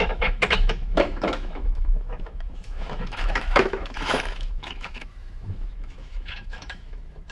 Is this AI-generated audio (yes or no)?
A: yes